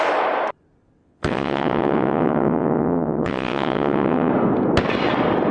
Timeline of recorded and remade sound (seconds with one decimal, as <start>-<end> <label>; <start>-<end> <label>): 0.0-1.0 recorded; 1.0-4.3 remade; 4.3-5.5 recorded